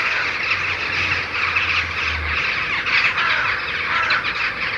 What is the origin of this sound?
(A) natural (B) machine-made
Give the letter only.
A